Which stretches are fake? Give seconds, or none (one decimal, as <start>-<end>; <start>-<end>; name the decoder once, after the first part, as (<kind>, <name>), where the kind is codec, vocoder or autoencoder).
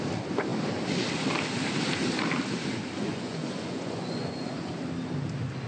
3.0-4.7 (vocoder, Vocos)